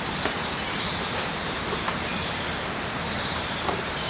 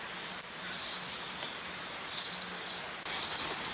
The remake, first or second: first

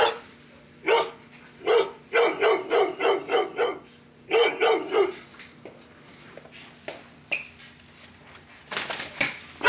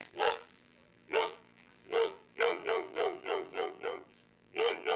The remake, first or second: second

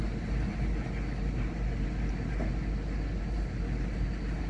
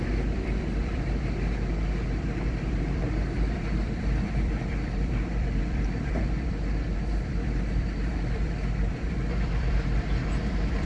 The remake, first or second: second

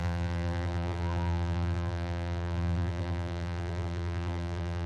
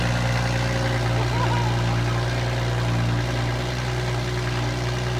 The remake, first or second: first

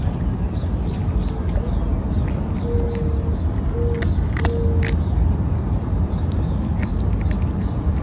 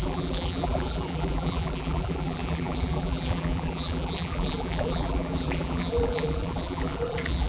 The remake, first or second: second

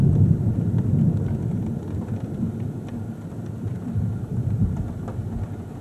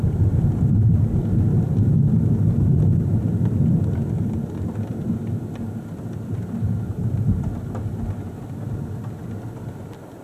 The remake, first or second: first